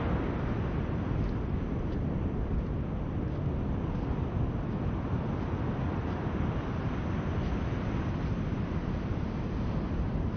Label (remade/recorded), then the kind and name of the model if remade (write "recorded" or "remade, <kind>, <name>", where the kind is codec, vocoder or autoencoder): recorded